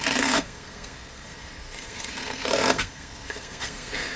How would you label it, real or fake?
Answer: fake